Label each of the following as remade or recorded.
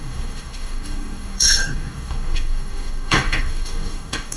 remade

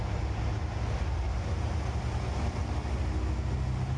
recorded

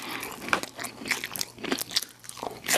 recorded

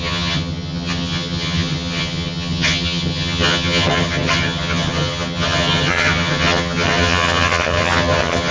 remade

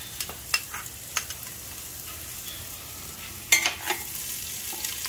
recorded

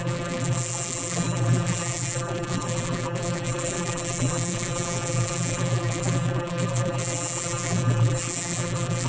remade